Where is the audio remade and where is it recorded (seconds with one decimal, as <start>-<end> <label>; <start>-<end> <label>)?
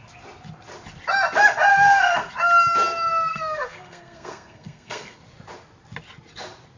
0.0-1.7 recorded; 1.7-2.3 remade; 2.3-3.3 recorded; 3.3-5.2 remade; 5.2-6.8 recorded